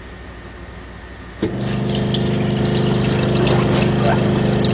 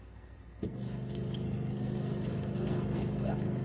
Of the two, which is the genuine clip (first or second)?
first